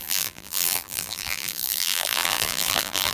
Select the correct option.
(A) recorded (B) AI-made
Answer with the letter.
B